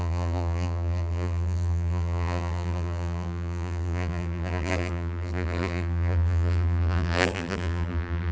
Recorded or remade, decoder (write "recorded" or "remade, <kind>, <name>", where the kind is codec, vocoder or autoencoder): remade, vocoder, BigVGAN v2